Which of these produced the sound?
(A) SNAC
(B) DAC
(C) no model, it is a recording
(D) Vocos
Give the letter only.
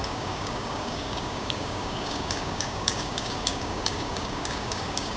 B